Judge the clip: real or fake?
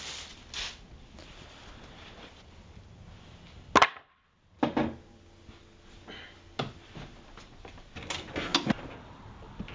real